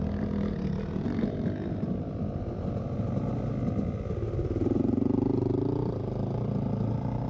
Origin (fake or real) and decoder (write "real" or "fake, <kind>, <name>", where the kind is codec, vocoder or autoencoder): real